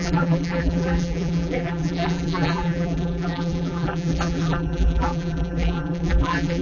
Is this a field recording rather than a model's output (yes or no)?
no